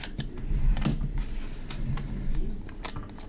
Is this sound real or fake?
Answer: real